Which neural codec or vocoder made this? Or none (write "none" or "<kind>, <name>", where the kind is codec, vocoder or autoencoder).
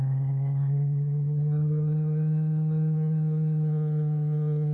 codec, SNAC